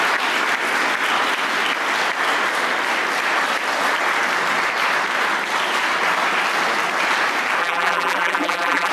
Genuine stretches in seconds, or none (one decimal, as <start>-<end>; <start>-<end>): 0.0-7.6